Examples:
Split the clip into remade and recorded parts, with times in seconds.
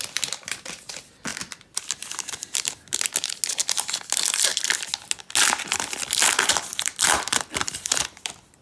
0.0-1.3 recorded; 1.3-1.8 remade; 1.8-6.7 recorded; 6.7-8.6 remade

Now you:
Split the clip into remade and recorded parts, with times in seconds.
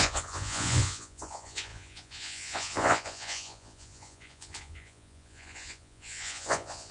0.0-6.9 remade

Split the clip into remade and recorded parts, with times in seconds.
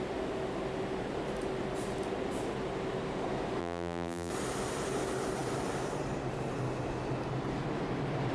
0.0-3.6 recorded; 3.6-4.3 remade; 4.3-8.3 recorded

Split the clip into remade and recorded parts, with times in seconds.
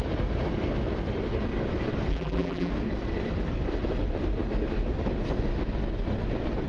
0.0-2.1 recorded; 2.1-2.7 remade; 2.7-6.7 recorded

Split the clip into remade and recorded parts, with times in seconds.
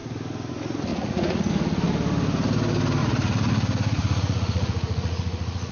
0.0-0.9 recorded; 0.9-1.5 remade; 1.5-3.0 recorded; 3.0-5.7 remade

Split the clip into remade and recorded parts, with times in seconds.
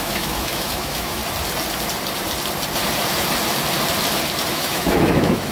0.0-1.2 remade; 1.2-4.5 recorded; 4.5-5.5 remade